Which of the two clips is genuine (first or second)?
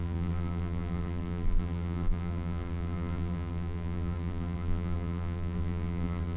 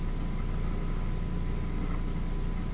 second